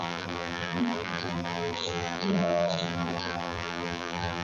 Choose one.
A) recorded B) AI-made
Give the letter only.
B